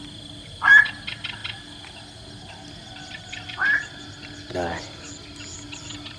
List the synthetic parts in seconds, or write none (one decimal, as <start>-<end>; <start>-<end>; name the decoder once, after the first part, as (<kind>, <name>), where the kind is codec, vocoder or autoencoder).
none